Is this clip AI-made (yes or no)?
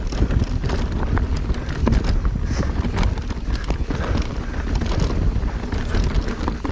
no